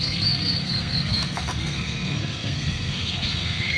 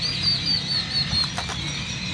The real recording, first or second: second